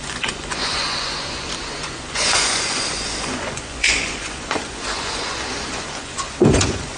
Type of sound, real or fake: fake